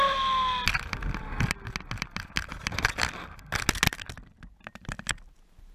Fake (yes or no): no